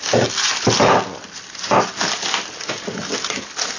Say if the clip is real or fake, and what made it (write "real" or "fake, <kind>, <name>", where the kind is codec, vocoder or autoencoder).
real